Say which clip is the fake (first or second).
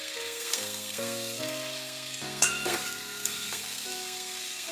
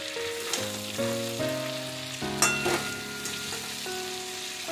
first